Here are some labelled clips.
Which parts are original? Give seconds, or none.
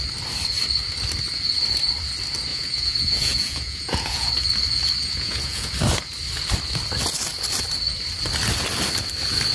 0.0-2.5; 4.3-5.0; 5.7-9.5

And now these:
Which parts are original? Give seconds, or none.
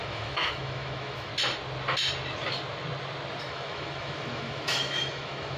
1.3-3.4